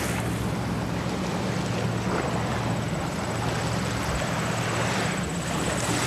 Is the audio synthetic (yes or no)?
no